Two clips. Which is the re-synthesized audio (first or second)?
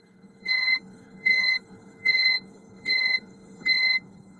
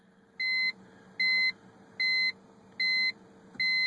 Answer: first